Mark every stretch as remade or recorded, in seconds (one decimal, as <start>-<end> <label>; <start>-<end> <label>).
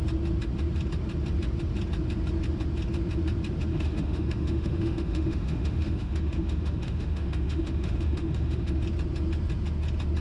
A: 0.0-3.7 recorded; 3.7-8.8 remade; 8.8-10.2 recorded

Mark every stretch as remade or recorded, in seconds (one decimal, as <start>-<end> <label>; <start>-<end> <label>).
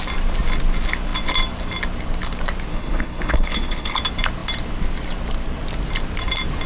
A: 0.0-2.7 recorded; 2.7-4.0 remade; 4.0-6.7 recorded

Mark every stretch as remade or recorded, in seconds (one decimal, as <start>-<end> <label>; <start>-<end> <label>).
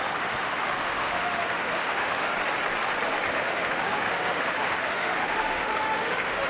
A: 0.0-2.3 remade; 2.3-3.3 recorded; 3.3-6.5 remade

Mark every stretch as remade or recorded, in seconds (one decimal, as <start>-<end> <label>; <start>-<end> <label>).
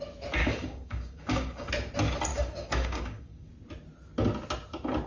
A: 0.0-0.4 recorded; 0.4-1.7 remade; 1.7-2.3 recorded; 2.3-3.5 remade; 3.5-5.1 recorded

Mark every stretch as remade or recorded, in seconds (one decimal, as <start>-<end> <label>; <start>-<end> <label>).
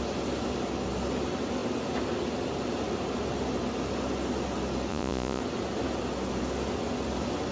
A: 0.0-4.9 recorded; 4.9-5.4 remade; 5.4-7.5 recorded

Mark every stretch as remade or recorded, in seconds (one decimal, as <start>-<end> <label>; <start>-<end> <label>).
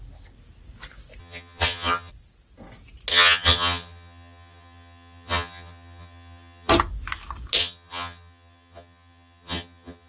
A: 0.0-1.2 recorded; 1.2-2.1 remade; 2.1-3.1 recorded; 3.1-6.7 remade; 6.7-7.6 recorded; 7.6-10.1 remade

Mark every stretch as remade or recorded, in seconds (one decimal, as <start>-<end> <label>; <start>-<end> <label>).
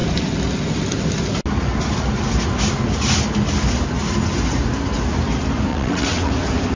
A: 0.0-5.7 recorded; 5.7-6.3 remade; 6.3-6.8 recorded